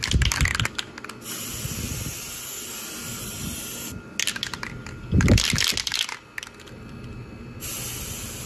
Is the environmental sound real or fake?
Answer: real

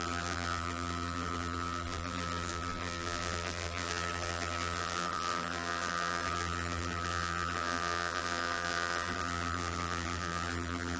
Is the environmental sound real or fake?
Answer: fake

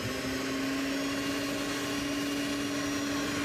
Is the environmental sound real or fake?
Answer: real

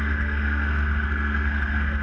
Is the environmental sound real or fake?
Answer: fake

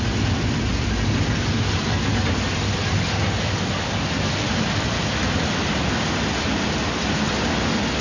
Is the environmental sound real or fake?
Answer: real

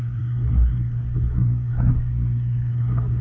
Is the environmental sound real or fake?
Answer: fake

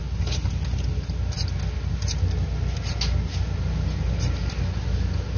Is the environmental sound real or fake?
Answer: real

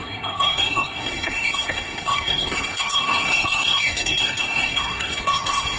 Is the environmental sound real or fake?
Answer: fake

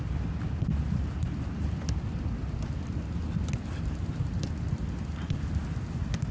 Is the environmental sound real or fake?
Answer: real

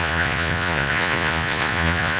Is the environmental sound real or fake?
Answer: fake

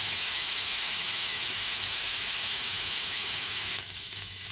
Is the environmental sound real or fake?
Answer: fake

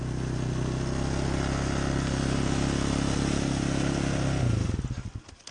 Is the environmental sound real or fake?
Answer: real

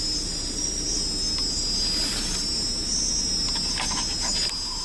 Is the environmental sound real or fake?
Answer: real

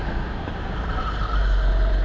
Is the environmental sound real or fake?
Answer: real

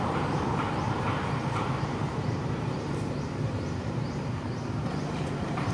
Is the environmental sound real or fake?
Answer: fake